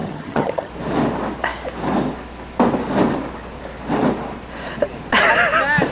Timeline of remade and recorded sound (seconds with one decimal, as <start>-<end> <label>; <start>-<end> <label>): 0.0-0.7 remade; 0.7-5.9 recorded

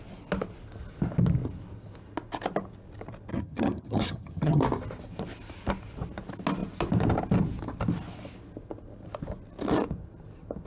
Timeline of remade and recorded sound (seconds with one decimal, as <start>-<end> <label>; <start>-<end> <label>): 0.0-3.3 recorded; 3.3-4.6 remade; 4.6-10.7 recorded

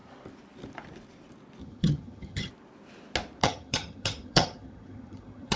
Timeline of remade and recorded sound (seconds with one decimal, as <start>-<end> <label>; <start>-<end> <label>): 0.0-1.6 recorded; 1.6-2.5 remade; 2.5-3.4 recorded; 3.4-5.6 remade

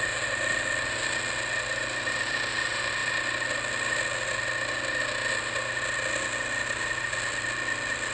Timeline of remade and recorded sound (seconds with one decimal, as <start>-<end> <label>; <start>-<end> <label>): 0.0-8.1 recorded

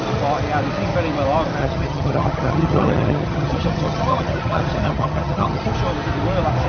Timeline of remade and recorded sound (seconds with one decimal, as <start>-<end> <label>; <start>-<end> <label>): 0.0-1.6 recorded; 1.6-5.6 remade; 5.6-6.7 recorded

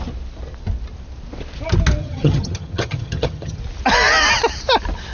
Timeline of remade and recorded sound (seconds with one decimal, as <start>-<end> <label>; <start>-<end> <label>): 0.0-2.0 recorded; 2.0-3.6 remade; 3.6-5.1 recorded

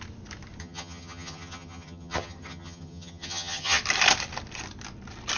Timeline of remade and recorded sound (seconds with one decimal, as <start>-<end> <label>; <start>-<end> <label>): 0.0-0.6 recorded; 0.6-3.8 remade; 3.8-5.4 recorded